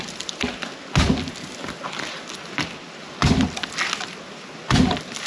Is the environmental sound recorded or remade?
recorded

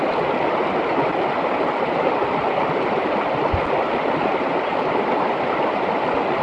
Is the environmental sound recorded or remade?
recorded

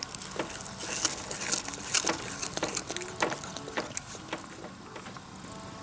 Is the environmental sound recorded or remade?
recorded